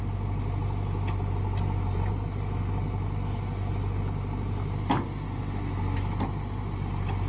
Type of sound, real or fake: real